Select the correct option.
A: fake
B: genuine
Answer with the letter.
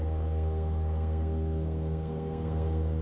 A